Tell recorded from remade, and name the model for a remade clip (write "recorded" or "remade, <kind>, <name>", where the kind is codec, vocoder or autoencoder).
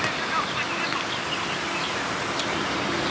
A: recorded